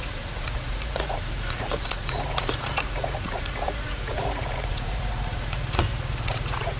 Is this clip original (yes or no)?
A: no